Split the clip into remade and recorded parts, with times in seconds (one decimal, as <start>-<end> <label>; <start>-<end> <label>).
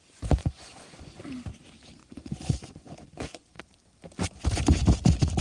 0.0-0.4 recorded; 0.4-1.2 remade; 1.2-2.0 recorded; 2.0-3.6 remade; 3.6-5.4 recorded